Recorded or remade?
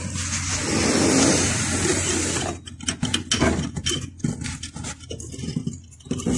recorded